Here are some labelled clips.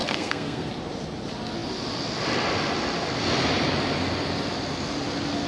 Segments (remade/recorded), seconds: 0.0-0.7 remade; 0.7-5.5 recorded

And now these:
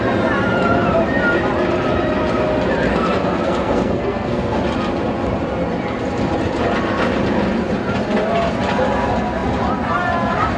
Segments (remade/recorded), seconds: 0.0-2.9 recorded; 2.9-4.6 remade; 4.6-10.6 recorded